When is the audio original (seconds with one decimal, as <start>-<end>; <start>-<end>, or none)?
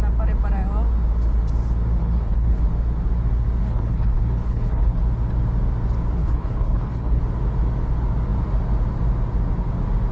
0.0-2.0; 2.6-3.6; 5.0-6.2; 7.2-10.1